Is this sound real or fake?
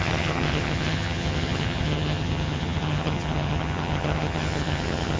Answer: fake